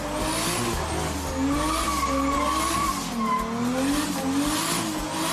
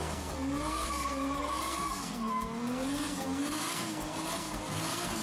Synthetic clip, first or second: second